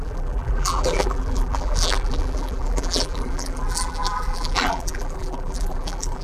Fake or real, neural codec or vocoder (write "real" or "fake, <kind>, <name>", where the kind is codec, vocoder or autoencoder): fake, vocoder, BigVGAN v2